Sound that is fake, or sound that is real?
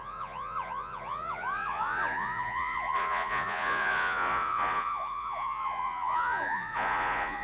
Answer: fake